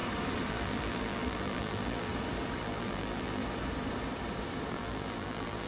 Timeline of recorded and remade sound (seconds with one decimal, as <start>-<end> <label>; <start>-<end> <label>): 0.0-0.5 recorded; 0.5-2.1 remade; 2.1-2.6 recorded; 2.6-3.4 remade; 3.4-4.7 recorded; 4.7-5.7 remade